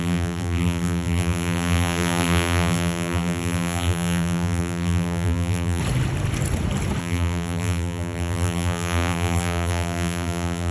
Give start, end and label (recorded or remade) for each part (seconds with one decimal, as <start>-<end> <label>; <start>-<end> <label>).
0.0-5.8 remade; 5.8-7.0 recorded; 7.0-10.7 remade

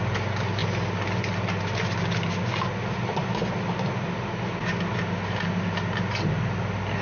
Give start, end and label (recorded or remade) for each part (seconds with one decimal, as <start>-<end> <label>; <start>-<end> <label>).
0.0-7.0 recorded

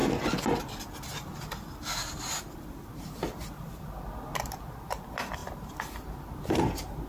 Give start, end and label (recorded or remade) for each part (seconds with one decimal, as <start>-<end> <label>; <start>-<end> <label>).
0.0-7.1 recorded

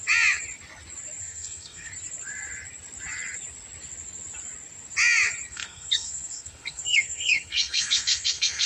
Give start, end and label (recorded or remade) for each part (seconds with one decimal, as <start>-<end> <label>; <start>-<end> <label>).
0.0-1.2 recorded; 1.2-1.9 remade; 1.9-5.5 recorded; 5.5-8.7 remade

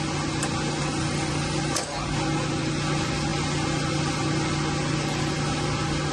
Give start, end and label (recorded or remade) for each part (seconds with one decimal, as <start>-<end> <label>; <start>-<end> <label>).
0.0-6.1 recorded

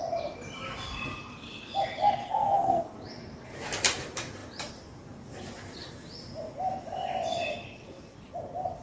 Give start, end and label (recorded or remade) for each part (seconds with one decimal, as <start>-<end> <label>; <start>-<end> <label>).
0.0-2.2 recorded; 2.2-2.8 remade; 2.8-8.8 recorded